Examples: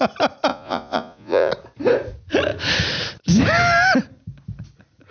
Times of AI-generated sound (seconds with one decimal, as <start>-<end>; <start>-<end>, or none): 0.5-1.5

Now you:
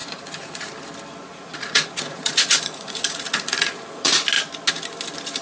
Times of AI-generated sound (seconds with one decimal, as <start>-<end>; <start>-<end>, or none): 0.0-0.7; 1.2-4.2

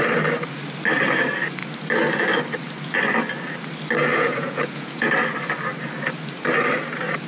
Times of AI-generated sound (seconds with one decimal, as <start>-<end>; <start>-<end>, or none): 4.1-5.1